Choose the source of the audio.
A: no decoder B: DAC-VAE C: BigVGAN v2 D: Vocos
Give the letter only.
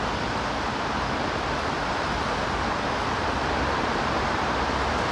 A